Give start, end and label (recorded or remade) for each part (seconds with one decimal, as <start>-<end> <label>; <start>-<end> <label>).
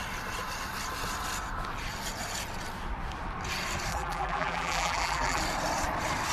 0.0-3.9 recorded; 3.9-5.4 remade; 5.4-6.3 recorded